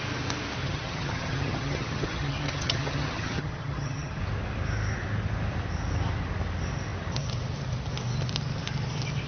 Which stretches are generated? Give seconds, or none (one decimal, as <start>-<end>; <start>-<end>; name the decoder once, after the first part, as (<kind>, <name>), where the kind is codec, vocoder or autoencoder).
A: 0.6-4.2 (vocoder, HiFi-GAN)

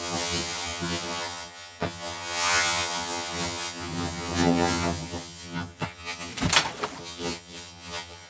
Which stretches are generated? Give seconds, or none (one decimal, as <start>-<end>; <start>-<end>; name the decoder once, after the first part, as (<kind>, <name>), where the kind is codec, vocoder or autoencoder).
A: 0.0-6.3 (vocoder, HiFi-GAN); 7.0-8.3

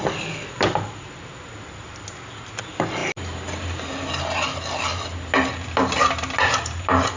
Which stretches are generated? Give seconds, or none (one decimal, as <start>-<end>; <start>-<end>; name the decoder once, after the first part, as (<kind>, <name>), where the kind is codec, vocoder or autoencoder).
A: none

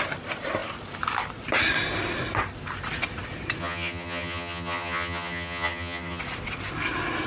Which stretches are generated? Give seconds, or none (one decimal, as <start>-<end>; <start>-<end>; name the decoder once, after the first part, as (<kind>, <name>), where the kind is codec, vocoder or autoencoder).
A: 3.6-6.2 (vocoder, HiFi-GAN)

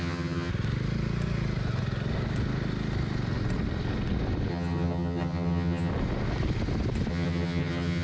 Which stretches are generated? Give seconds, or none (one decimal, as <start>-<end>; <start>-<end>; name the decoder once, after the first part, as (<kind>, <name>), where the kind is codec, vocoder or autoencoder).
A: 0.0-0.5 (vocoder, HiFi-GAN); 4.5-5.9; 7.1-8.0

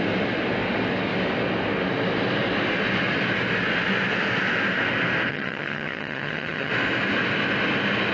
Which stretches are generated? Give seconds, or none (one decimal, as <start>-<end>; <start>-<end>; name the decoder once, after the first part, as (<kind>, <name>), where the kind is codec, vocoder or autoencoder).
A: 5.3-6.7 (vocoder, HiFi-GAN)